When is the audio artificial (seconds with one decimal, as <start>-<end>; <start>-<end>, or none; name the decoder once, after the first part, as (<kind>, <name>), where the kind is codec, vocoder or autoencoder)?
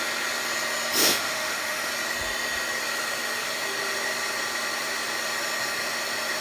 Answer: 1.0-1.9 (autoencoder, DAC-VAE)